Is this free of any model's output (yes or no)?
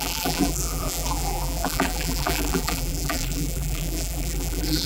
no